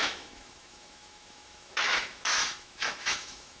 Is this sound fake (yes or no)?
yes